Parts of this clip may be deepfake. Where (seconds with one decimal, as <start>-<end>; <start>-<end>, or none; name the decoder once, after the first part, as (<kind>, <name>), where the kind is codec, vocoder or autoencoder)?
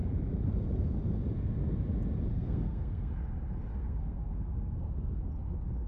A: 2.3-3.1 (codec, SNAC); 3.7-5.2